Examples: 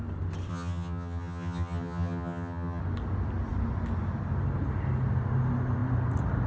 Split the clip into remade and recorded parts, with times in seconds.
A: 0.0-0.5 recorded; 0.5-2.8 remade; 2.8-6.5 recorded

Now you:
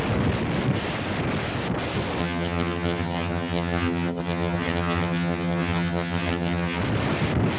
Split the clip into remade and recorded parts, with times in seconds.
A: 0.0-2.2 recorded; 2.2-6.8 remade; 6.8-7.6 recorded

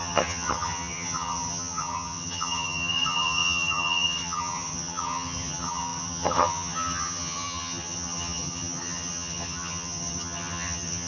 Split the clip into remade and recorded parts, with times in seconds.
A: 0.0-11.1 remade

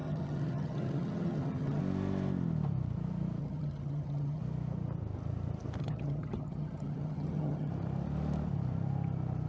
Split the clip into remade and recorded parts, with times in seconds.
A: 0.0-1.8 remade; 1.8-3.4 recorded; 3.4-4.4 remade; 4.4-5.8 recorded; 5.8-7.7 remade; 7.7-9.5 recorded

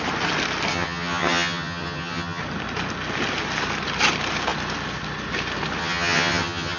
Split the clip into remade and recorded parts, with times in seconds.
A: 0.0-0.7 recorded; 0.7-2.4 remade; 2.4-5.8 recorded; 5.8-6.8 remade

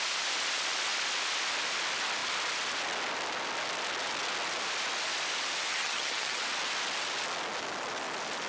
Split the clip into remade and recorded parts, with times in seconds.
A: 0.0-5.7 recorded; 5.7-6.4 remade; 6.4-8.5 recorded

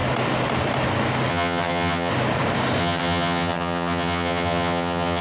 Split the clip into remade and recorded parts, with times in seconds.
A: 0.0-1.3 recorded; 1.3-2.1 remade; 2.1-2.8 recorded; 2.8-5.2 remade

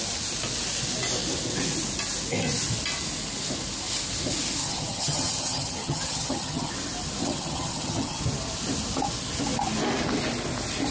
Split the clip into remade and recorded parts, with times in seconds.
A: 0.0-4.6 recorded; 4.6-6.7 remade; 6.7-7.2 recorded; 7.2-8.2 remade; 8.2-10.9 recorded